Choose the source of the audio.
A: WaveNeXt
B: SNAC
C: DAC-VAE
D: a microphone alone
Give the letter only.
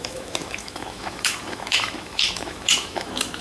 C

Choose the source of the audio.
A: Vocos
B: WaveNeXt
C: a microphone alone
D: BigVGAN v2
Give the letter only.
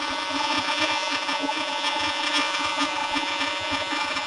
A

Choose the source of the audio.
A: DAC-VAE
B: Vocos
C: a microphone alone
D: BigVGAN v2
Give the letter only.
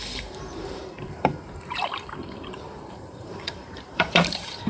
D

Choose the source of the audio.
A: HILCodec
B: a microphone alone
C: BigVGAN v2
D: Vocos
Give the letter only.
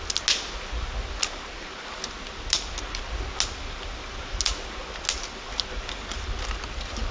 B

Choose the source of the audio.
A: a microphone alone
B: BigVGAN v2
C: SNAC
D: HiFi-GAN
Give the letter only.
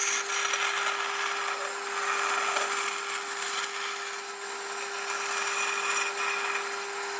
A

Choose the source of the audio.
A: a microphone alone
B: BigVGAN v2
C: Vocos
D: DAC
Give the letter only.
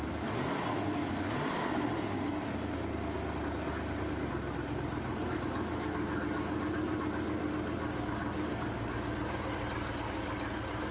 A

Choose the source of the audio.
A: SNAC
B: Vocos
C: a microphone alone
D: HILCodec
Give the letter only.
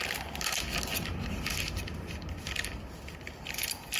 C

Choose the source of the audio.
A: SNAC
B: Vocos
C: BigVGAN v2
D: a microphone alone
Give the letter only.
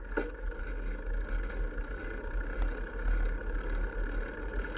D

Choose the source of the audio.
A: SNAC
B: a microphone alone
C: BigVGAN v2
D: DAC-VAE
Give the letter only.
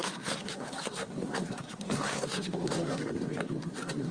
A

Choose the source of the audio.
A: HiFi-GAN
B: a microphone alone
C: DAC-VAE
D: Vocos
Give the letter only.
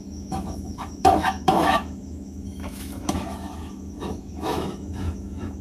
C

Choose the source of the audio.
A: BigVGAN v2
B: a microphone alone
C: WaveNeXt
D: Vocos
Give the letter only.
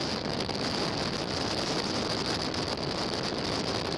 B